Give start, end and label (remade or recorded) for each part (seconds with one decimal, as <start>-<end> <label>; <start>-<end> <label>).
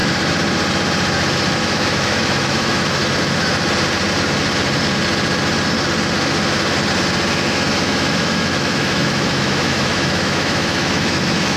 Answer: 0.0-1.6 recorded; 1.6-3.0 remade; 3.0-7.5 recorded; 7.5-11.6 remade